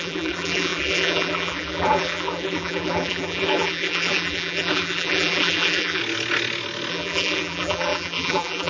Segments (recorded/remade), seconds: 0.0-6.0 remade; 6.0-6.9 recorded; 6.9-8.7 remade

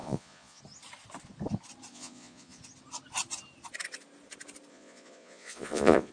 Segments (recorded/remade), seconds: 0.0-0.6 remade; 0.6-1.9 recorded; 1.9-2.6 remade; 2.6-4.7 recorded; 4.7-6.1 remade

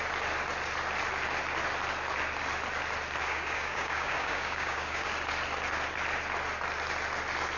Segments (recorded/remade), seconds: 0.0-3.2 recorded; 3.2-5.1 remade; 5.1-7.6 recorded

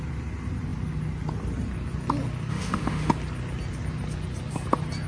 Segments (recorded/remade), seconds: 0.0-2.5 recorded; 2.5-3.1 remade; 3.1-5.1 recorded

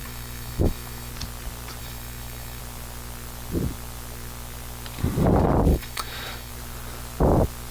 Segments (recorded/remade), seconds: 0.0-1.1 remade; 1.1-1.8 recorded; 1.8-2.6 remade; 2.6-5.7 recorded; 5.7-6.5 remade; 6.5-7.7 recorded